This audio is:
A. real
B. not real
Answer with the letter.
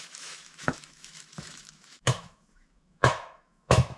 B